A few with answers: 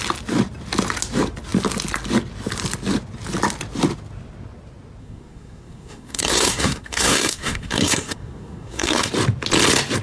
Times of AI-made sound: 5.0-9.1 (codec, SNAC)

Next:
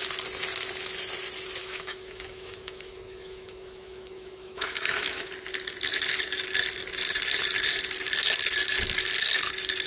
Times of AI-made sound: 1.6-5.3 (autoencoder, DAC-VAE)

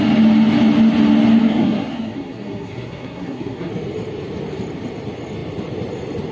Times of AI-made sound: 1.4-3.7 (codec, SNAC)

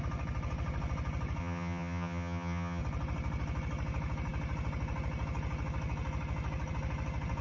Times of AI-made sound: 1.4-2.8 (vocoder, HiFi-GAN)

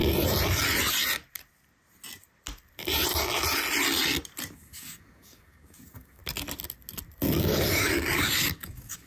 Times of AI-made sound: 4.5-6.2 (codec, DAC); 7.4-9.1

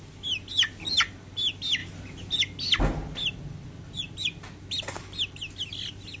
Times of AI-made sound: none

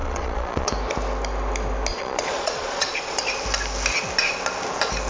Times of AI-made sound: 0.0-0.7 (vocoder, Vocos); 1.9-3.2

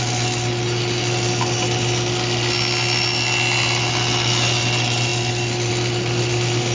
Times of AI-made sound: none